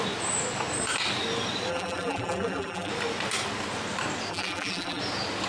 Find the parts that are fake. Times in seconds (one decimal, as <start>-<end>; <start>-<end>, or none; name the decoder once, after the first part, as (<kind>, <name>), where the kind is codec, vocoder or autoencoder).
1.7-2.9 (vocoder, BigVGAN v2); 4.3-5.0